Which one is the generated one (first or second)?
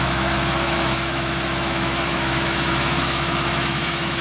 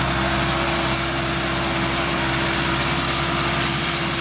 first